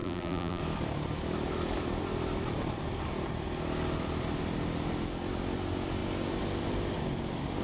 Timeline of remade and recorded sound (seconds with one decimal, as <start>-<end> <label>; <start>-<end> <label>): 0.0-0.6 remade; 0.6-7.6 recorded